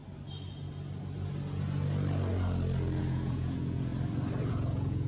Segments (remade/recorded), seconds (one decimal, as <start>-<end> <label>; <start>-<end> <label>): 0.0-3.0 recorded; 3.0-3.9 remade; 3.9-4.5 recorded; 4.5-5.1 remade